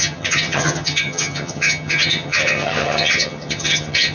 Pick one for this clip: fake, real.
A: fake